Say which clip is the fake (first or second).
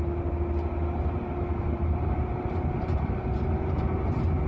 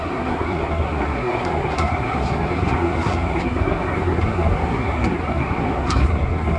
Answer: second